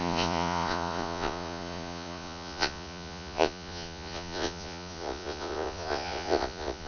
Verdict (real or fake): fake